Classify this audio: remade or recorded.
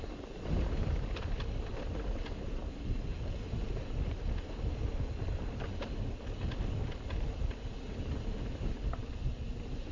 recorded